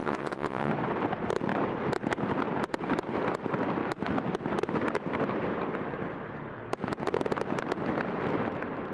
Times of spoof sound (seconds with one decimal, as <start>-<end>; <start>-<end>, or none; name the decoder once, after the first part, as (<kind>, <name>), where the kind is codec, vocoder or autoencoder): 0.0-0.7 (vocoder, WaveNeXt)